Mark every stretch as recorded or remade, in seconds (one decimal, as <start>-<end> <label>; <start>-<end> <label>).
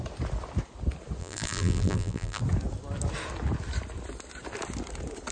0.0-1.2 recorded; 1.2-2.4 remade; 2.4-5.3 recorded